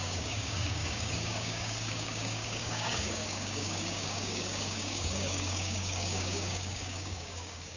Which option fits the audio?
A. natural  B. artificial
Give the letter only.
B